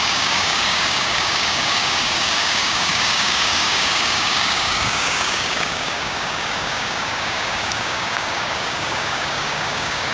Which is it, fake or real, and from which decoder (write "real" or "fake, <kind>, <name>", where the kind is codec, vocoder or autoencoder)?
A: fake, codec, DAC